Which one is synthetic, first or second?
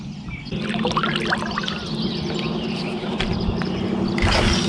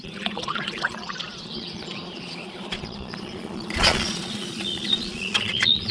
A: second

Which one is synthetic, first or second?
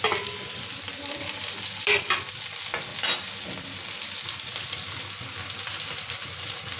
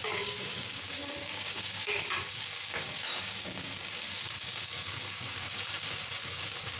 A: second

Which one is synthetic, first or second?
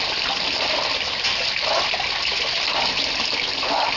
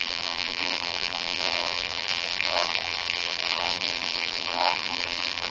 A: second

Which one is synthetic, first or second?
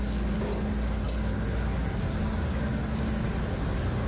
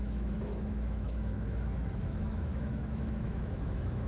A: second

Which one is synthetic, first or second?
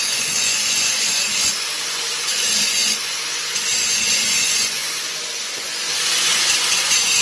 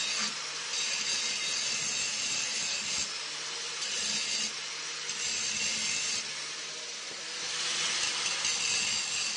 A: first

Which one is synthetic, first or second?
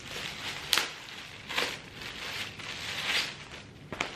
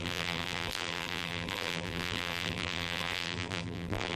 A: second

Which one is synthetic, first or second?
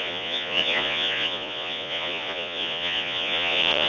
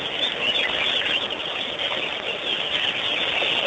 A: first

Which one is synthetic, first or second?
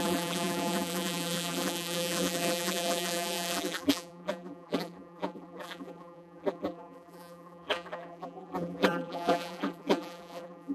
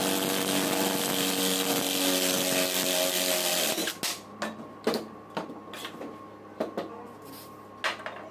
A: first